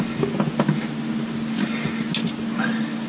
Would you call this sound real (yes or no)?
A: yes